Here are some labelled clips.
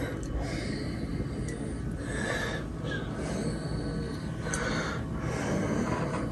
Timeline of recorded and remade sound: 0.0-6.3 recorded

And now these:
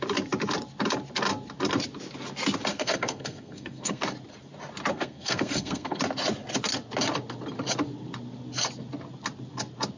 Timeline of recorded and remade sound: 0.0-2.7 recorded; 2.7-4.0 remade; 4.0-4.9 recorded; 4.9-6.0 remade; 6.0-10.0 recorded